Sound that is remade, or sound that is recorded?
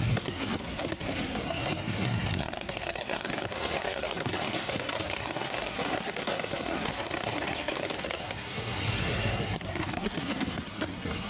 remade